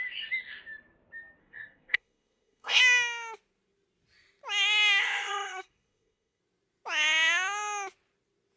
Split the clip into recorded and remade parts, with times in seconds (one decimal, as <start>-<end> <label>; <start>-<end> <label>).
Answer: 0.0-1.4 recorded; 1.4-2.8 remade; 2.8-5.0 recorded; 5.0-6.4 remade; 6.4-8.6 recorded